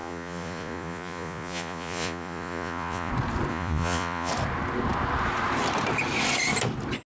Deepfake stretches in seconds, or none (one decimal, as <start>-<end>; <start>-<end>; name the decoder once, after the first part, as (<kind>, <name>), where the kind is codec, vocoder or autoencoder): 0.0-3.1 (vocoder, Vocos); 3.5-4.3